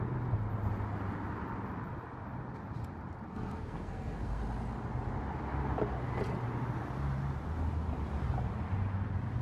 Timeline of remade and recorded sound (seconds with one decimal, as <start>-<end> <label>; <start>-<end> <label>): 0.0-3.3 recorded; 3.3-4.4 remade; 4.4-9.4 recorded